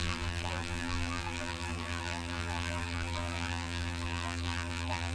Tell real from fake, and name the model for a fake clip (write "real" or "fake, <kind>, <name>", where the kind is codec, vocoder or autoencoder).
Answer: fake, vocoder, BigVGAN v2